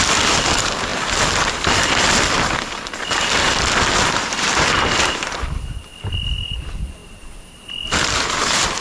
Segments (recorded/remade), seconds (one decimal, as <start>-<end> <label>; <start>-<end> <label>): 0.0-0.9 remade; 0.9-2.0 recorded; 2.0-7.0 remade; 7.0-8.8 recorded